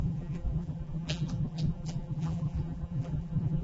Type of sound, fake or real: fake